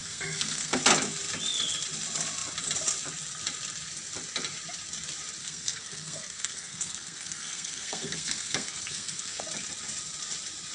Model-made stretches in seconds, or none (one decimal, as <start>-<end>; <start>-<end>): 0.0-0.8; 5.4-9.4